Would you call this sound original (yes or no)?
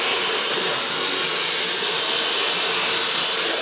yes